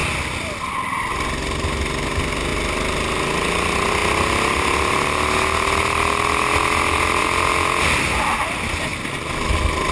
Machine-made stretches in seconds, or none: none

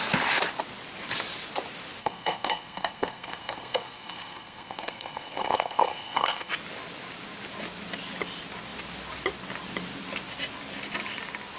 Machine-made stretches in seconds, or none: 2.0-6.5

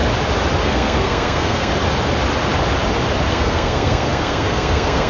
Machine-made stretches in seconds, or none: 0.6-1.7; 3.3-5.1

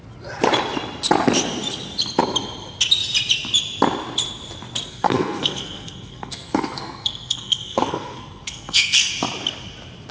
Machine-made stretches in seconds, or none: 4.9-9.1